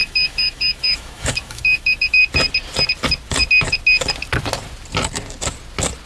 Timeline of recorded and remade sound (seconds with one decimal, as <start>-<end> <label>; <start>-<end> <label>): 0.0-2.2 remade; 2.2-6.1 recorded